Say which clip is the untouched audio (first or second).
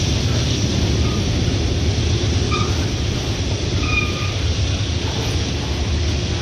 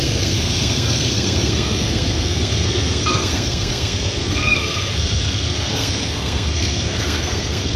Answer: first